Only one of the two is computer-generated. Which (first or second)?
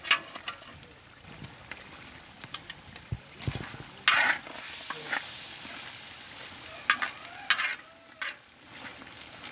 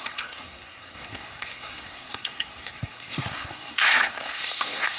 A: second